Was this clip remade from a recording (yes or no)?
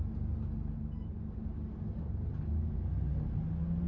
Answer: no